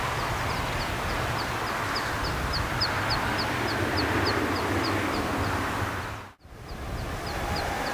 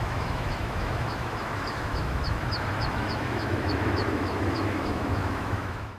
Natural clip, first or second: first